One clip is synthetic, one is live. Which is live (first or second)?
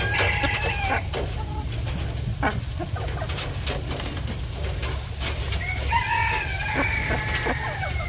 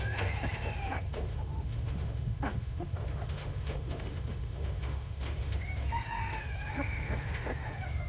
first